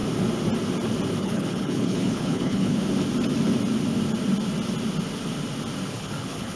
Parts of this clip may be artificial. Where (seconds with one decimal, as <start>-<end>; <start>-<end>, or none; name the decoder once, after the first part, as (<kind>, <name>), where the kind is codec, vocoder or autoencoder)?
1.2-2.8 (codec, HILCodec); 5.9-6.6

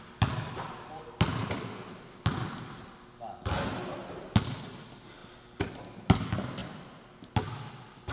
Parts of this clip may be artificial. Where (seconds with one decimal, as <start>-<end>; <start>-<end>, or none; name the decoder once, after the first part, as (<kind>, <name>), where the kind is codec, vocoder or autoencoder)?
none

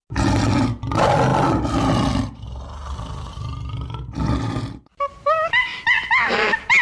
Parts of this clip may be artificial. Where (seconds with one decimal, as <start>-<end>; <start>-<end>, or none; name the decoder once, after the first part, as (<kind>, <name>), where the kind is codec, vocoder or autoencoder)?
none

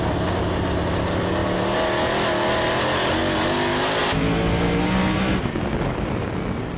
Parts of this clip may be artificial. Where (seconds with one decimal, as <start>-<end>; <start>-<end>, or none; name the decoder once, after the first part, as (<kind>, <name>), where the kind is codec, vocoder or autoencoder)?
none

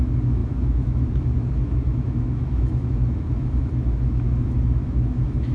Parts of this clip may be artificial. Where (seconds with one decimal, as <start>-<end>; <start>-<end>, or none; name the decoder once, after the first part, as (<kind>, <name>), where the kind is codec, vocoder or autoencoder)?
0.0-5.5 (autoencoder, DAC-VAE)